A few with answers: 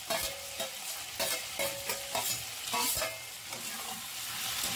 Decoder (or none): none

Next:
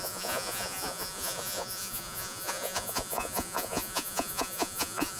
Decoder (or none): vocoder, Vocos